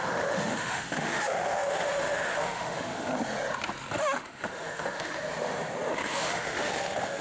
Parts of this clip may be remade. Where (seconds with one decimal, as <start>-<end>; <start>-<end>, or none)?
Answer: 0.0-3.1; 3.9-5.2; 5.9-7.2